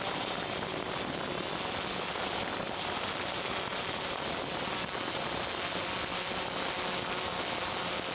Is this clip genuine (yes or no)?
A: yes